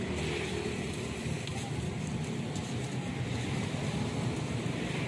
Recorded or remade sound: recorded